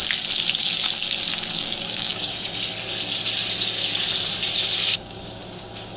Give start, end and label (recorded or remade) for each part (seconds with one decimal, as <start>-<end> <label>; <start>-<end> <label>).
0.0-1.6 recorded; 1.6-2.7 remade; 2.7-4.9 recorded; 4.9-5.4 remade; 5.4-6.0 recorded